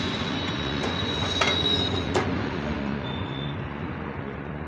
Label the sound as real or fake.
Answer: fake